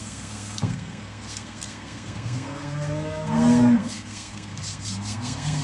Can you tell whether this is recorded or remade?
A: remade